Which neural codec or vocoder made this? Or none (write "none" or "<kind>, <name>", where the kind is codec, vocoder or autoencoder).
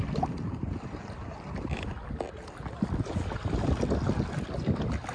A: none